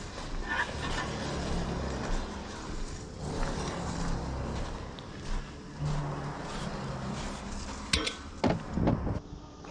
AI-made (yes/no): no